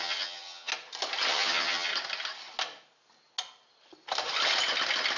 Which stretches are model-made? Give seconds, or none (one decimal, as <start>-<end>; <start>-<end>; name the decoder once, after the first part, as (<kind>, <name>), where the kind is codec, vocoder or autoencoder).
0.0-0.7 (vocoder, HiFi-GAN); 1.3-1.9

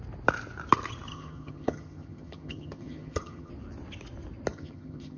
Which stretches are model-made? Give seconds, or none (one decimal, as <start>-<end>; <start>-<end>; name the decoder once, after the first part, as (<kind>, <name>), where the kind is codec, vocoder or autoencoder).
1.1-3.5 (vocoder, HiFi-GAN); 4.5-5.2

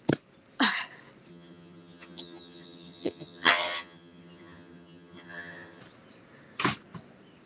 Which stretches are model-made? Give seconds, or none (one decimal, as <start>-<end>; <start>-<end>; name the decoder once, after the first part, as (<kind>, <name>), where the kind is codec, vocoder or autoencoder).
1.3-5.8 (vocoder, HiFi-GAN)

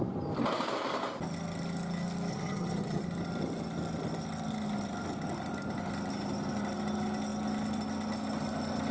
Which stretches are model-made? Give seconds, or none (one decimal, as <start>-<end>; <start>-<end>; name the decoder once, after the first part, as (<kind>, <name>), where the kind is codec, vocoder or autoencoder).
2.3-3.0 (vocoder, HiFi-GAN)

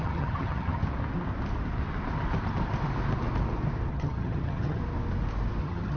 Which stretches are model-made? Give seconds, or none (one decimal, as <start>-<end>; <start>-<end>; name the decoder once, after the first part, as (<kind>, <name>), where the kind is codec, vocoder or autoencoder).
0.0-0.8 (vocoder, HiFi-GAN); 3.9-4.8; 5.6-6.0

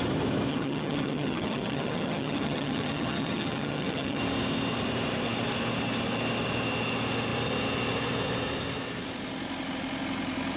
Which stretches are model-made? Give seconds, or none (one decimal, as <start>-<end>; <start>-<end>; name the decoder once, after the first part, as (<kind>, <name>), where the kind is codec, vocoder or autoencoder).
0.5-4.2 (vocoder, HiFi-GAN)

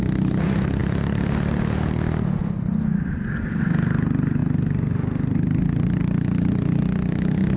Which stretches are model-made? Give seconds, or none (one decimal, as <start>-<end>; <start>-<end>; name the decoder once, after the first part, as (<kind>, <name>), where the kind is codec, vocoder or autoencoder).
none